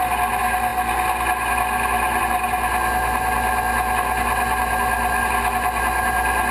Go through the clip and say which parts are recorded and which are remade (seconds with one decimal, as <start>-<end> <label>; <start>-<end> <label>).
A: 0.0-6.5 recorded